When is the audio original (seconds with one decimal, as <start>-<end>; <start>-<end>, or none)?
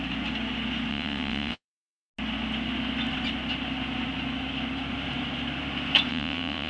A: 0.0-0.9; 2.1-6.1